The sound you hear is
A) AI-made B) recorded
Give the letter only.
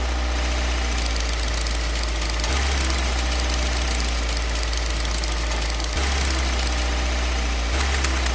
B